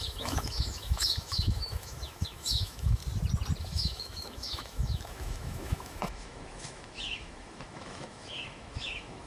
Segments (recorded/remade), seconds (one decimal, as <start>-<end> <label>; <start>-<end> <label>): 0.0-3.0 remade; 3.0-3.6 recorded; 3.6-9.3 remade